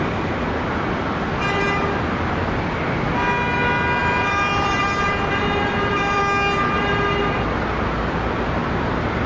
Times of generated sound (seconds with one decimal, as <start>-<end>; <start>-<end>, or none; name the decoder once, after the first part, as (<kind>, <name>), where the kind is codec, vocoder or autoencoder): 4.0-6.2 (vocoder, BigVGAN v2)